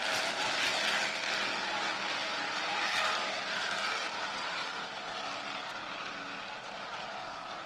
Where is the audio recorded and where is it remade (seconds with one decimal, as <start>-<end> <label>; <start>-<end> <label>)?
0.0-0.7 remade; 0.7-2.2 recorded; 2.2-4.9 remade; 4.9-7.7 recorded

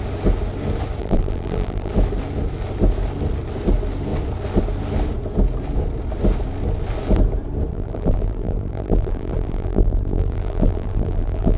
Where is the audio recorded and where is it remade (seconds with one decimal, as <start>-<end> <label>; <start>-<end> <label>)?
0.0-1.0 recorded; 1.0-1.9 remade; 1.9-7.7 recorded; 7.7-11.6 remade

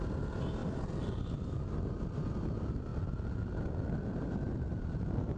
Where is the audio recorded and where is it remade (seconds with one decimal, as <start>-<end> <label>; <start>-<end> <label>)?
0.0-0.6 recorded; 0.6-1.1 remade; 1.1-5.4 recorded